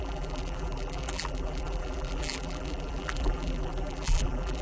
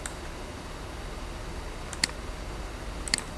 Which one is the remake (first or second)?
first